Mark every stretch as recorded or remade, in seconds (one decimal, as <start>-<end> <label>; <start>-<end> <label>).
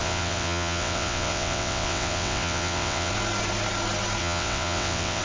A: 0.0-3.1 remade; 3.1-4.2 recorded; 4.2-5.2 remade